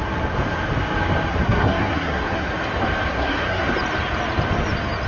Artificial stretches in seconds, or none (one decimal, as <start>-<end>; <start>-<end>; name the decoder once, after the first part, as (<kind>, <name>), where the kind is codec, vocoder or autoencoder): 1.3-2.5 (codec, SNAC); 3.1-3.7